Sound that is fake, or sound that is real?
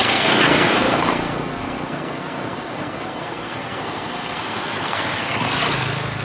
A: fake